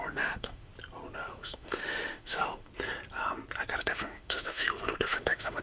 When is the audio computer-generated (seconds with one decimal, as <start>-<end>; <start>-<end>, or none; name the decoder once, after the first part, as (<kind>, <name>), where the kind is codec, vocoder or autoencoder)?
0.0-0.7 (autoencoder, DAC-VAE); 1.2-2.7; 3.8-5.6